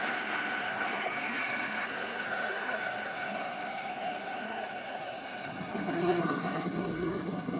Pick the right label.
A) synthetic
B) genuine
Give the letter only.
A